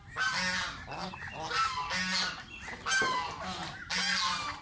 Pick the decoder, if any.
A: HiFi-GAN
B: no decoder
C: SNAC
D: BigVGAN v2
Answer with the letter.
B